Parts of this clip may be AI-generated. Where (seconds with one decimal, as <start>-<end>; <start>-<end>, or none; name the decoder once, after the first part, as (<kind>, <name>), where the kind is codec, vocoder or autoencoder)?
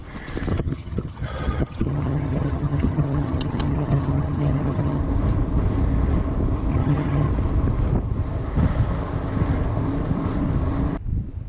0.5-5.0 (vocoder, HiFi-GAN); 6.7-7.3